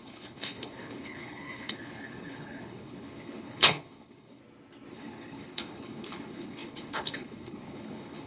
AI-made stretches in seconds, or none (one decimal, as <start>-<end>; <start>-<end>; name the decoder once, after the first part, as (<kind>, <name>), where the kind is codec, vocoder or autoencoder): 0.0-4.4 (codec, HILCodec); 4.9-8.3